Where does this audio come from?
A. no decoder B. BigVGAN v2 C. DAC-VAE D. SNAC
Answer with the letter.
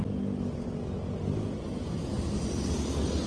A